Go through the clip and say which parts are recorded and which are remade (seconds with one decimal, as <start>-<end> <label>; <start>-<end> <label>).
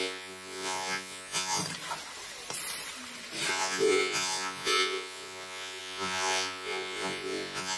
0.0-1.6 remade; 1.6-3.5 recorded; 3.5-7.8 remade